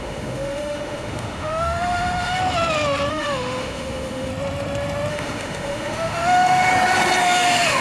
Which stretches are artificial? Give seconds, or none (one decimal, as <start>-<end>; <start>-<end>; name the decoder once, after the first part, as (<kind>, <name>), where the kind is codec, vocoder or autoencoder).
0.0-2.4 (autoencoder, DAC-VAE); 3.1-4.3; 5.1-6.7; 7.2-7.8